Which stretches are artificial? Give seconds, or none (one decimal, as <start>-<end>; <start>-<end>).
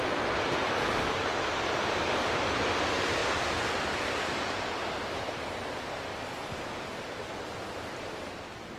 0.6-2.2